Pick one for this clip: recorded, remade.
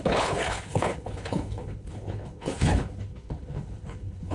remade